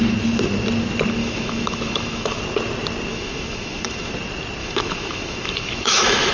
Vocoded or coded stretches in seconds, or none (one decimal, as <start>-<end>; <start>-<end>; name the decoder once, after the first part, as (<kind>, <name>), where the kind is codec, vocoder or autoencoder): 1.2-2.4 (autoencoder, DAC-VAE); 3.1-4.1; 4.6-6.3